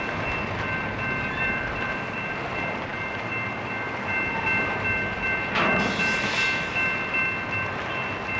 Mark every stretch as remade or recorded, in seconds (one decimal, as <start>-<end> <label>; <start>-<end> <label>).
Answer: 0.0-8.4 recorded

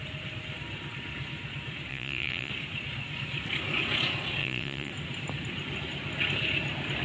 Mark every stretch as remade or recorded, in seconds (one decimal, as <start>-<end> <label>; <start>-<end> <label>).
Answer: 0.0-1.9 recorded; 1.9-2.5 remade; 2.5-4.4 recorded; 4.4-4.9 remade; 4.9-7.0 recorded

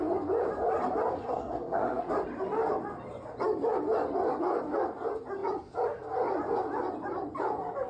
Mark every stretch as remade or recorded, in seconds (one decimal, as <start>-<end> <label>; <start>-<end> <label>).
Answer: 0.0-1.2 recorded; 1.2-2.1 remade; 2.1-7.9 recorded

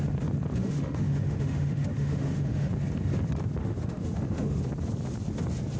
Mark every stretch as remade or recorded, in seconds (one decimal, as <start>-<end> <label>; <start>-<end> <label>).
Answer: 0.0-0.6 recorded; 0.6-2.7 remade; 2.7-3.6 recorded; 3.6-4.6 remade; 4.6-5.8 recorded

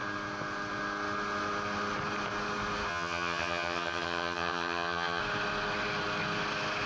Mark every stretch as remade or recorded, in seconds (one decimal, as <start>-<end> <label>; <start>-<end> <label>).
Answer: 0.0-2.9 recorded; 2.9-5.2 remade; 5.2-6.9 recorded